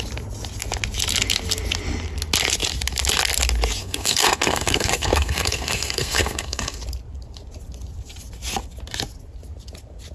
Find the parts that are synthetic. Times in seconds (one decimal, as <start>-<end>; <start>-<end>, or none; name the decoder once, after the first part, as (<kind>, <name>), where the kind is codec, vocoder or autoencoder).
3.8-6.8 (codec, SNAC)